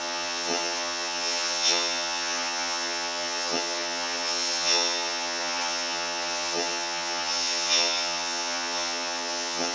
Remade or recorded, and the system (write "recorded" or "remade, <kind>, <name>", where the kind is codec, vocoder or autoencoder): remade, vocoder, HiFi-GAN